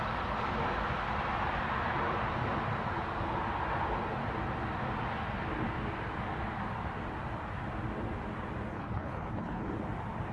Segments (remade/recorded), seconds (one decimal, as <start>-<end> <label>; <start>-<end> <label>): 0.0-8.7 recorded; 8.7-9.7 remade; 9.7-10.3 recorded